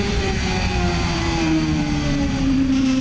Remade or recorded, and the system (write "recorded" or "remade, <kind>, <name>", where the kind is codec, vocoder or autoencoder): remade, vocoder, BigVGAN v2